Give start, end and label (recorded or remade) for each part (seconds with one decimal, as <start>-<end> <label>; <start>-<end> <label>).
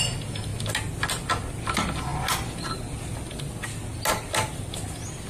0.0-5.3 recorded